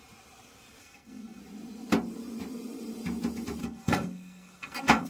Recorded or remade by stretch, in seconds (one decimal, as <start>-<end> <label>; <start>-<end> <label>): 0.0-0.8 recorded; 0.8-1.4 remade; 1.4-3.6 recorded; 3.6-5.1 remade